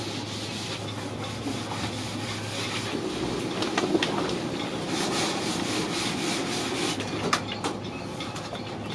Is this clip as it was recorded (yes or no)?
yes